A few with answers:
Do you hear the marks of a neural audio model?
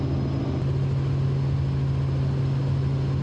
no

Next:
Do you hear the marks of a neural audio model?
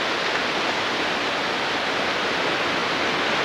no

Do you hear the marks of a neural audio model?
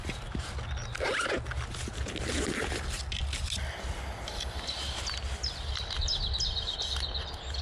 no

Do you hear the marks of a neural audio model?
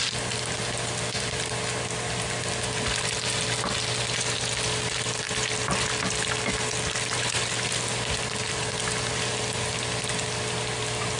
no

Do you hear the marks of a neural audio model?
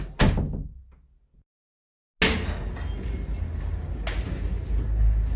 no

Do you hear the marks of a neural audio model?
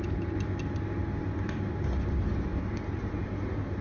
no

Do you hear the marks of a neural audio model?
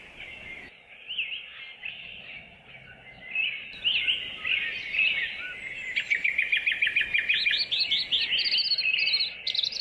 no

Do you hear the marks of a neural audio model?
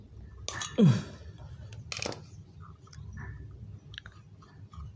no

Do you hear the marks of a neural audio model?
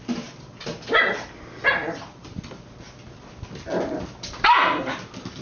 no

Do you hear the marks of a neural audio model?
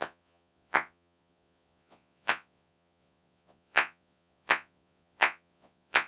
yes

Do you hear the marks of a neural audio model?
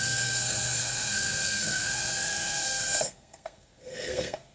yes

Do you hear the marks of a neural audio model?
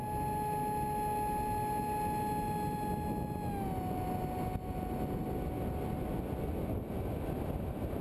no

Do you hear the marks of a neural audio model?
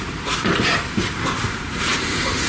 yes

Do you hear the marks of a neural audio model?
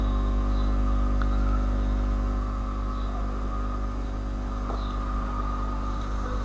no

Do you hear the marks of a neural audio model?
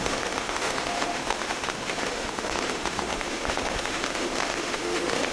yes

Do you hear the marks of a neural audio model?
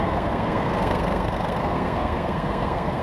yes